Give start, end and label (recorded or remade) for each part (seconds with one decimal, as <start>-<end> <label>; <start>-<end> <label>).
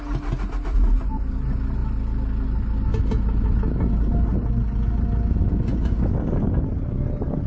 0.0-7.5 recorded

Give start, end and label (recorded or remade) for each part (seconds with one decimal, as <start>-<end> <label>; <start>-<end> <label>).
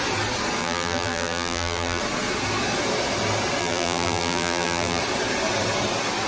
0.0-0.6 recorded; 0.6-2.0 remade; 2.0-3.6 recorded; 3.6-5.0 remade; 5.0-6.3 recorded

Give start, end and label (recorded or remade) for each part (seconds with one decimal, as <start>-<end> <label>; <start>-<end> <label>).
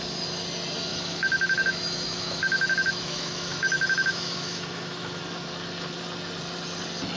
0.0-0.9 recorded; 0.9-5.2 remade; 5.2-7.2 recorded